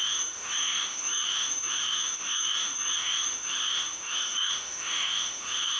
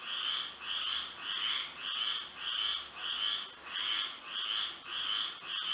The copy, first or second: first